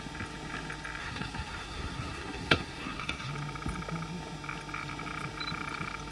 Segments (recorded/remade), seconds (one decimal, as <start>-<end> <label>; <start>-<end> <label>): 0.0-1.0 recorded; 1.0-3.3 remade; 3.3-6.1 recorded